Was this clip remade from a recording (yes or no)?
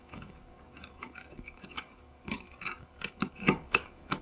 yes